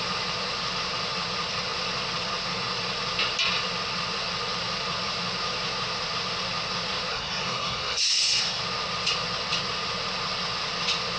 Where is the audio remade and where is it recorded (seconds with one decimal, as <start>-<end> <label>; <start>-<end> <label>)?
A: 0.0-7.1 recorded; 7.1-8.6 remade; 8.6-11.2 recorded